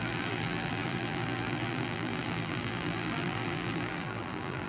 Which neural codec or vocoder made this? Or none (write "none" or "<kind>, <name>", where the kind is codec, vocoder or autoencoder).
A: vocoder, BigVGAN v2